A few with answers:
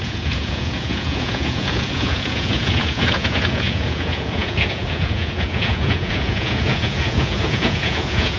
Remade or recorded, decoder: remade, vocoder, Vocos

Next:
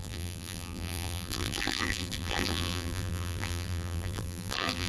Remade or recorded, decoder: remade, vocoder, BigVGAN v2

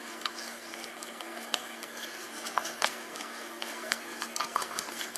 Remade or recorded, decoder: remade, codec, SNAC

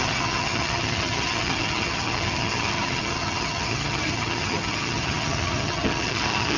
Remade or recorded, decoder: remade, vocoder, HiFi-GAN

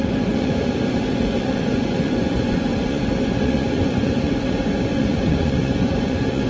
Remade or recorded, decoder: remade, vocoder, Vocos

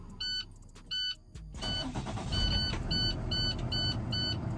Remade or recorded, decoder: recorded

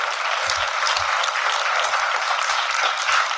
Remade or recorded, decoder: remade, vocoder, BigVGAN v2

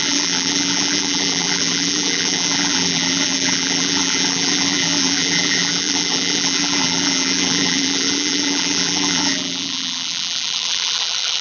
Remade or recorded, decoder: remade, vocoder, BigVGAN v2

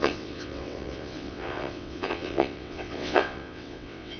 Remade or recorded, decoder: remade, vocoder, WaveNeXt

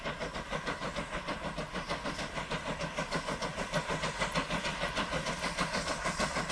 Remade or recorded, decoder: recorded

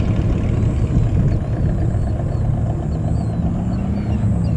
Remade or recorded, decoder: recorded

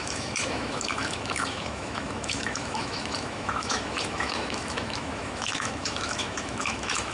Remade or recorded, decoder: remade, autoencoder, DAC-VAE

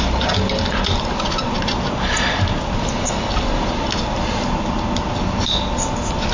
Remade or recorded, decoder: recorded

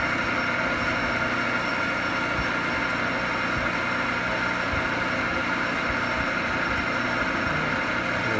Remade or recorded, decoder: recorded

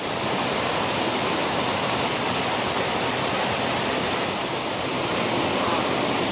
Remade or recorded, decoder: remade, vocoder, BigVGAN v2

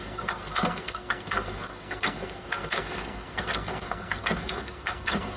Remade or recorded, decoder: remade, codec, SNAC